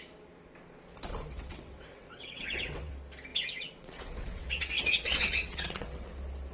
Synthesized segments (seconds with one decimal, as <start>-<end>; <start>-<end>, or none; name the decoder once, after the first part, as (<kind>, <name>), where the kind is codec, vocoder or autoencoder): 1.3-2.9 (vocoder, WaveNeXt); 3.3-6.1